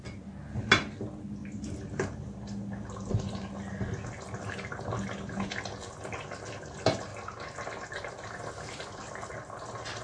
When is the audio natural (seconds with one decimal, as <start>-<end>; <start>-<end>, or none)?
0.0-10.0